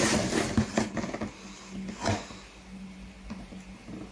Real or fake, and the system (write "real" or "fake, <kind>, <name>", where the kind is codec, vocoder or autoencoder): real